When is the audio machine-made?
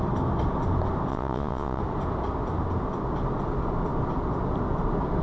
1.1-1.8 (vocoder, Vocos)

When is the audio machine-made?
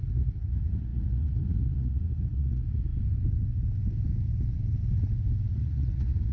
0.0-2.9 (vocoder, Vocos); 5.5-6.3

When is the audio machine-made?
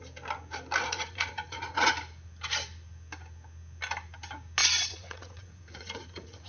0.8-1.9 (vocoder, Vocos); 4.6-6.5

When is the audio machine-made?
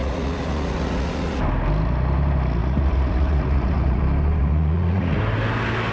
0.0-1.4 (vocoder, Vocos); 2.6-4.0; 4.4-5.2